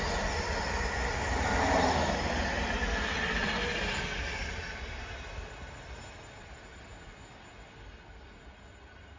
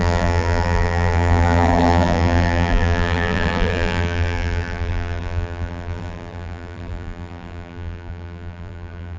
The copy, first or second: second